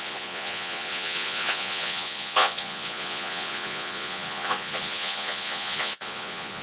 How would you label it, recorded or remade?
remade